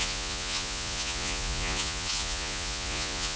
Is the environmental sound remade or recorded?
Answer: remade